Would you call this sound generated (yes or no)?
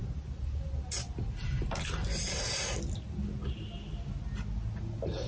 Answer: no